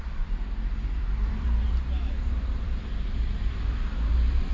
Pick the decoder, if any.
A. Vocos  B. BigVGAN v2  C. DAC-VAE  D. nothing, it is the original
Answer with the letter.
B